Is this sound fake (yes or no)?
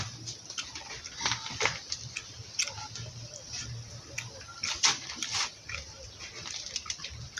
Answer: no